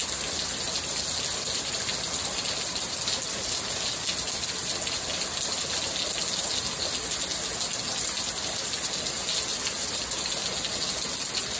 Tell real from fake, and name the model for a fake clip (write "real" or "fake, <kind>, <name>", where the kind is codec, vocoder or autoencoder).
real